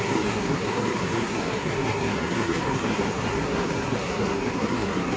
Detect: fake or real fake